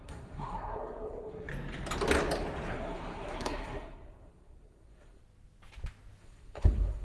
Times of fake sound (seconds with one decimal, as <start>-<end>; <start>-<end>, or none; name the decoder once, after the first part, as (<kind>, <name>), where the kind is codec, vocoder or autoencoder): 0.0-1.5 (codec, SNAC); 2.7-5.2; 6.2-7.0